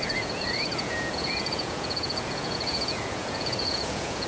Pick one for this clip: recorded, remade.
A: remade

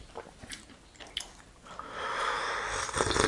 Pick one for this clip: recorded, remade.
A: recorded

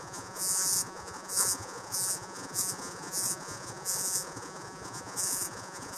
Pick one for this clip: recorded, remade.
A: remade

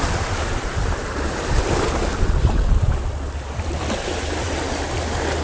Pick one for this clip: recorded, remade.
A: recorded